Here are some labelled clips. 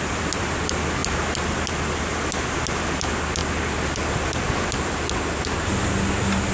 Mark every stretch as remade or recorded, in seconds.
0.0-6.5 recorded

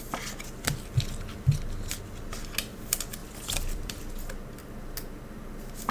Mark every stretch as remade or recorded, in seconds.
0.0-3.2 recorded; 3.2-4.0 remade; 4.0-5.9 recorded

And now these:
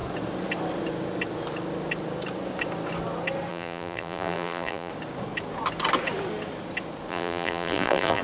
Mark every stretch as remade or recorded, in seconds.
0.0-3.5 recorded; 3.5-4.9 remade; 4.9-7.1 recorded; 7.1-8.2 remade